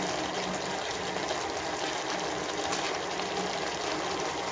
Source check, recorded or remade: recorded